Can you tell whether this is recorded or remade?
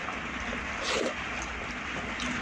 recorded